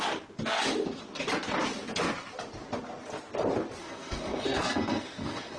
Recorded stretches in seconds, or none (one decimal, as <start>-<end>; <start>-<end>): 0.0-3.8